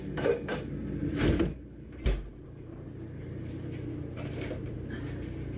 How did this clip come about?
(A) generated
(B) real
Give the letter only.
B